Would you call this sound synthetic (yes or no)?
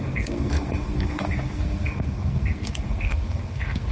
yes